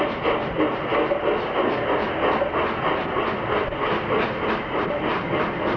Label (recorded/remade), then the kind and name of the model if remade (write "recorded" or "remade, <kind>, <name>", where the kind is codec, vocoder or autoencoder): recorded